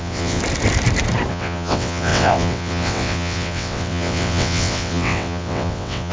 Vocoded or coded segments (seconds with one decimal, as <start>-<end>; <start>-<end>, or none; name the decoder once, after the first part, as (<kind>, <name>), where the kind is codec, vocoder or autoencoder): 0.0-0.4 (vocoder, WaveNeXt); 1.3-6.1